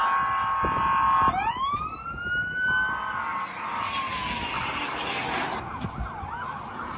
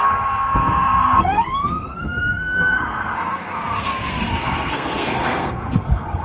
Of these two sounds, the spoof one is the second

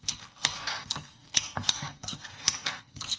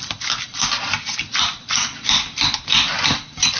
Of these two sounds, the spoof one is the first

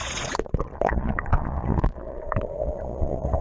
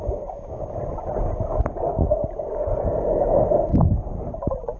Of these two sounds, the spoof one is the first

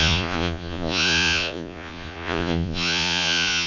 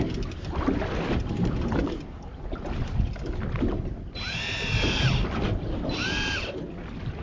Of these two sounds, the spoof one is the first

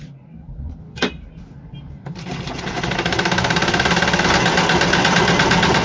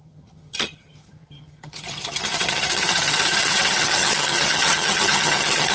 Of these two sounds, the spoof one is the second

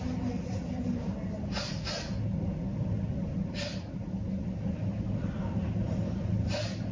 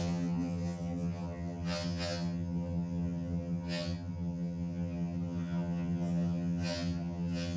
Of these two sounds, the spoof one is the second